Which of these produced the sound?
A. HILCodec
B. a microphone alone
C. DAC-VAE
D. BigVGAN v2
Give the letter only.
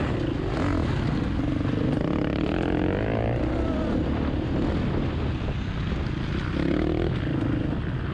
B